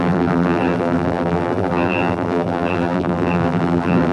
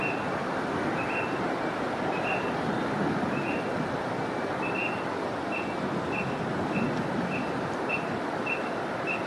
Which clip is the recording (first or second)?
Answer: second